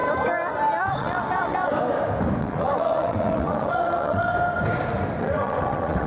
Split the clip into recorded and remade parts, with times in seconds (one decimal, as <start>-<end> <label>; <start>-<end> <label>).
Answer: 0.0-0.8 recorded; 0.8-1.7 remade; 1.7-2.4 recorded; 2.4-4.3 remade; 4.3-5.2 recorded; 5.2-6.1 remade